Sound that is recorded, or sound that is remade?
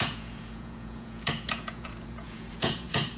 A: remade